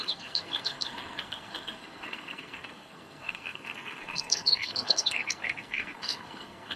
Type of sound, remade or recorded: remade